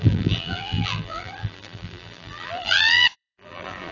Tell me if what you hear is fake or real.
fake